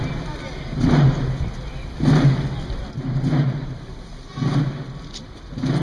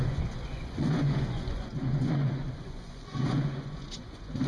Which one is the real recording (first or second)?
first